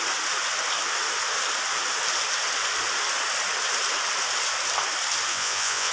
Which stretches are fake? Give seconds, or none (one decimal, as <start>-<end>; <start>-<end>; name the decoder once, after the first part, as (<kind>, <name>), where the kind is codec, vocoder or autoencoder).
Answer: 5.3-5.9 (vocoder, Vocos)